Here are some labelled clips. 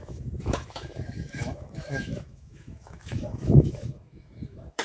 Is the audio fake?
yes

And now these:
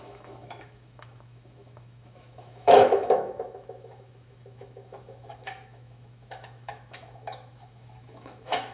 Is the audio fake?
yes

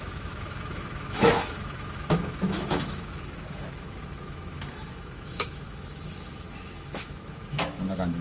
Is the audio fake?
yes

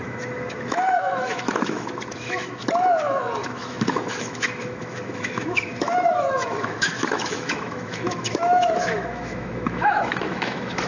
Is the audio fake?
yes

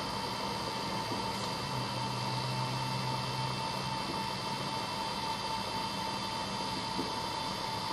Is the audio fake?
no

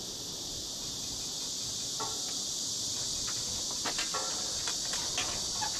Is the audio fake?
no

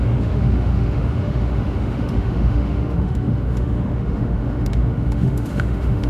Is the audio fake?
yes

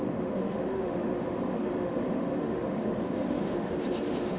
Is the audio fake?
yes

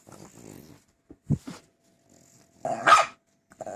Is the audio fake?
no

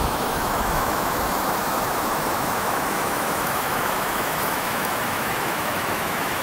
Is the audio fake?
yes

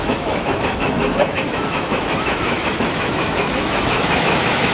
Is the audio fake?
yes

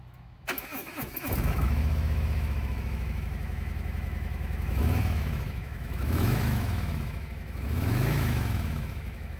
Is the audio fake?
yes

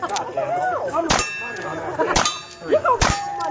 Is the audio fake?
no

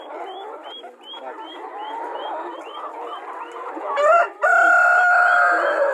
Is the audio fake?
no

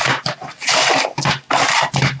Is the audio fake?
no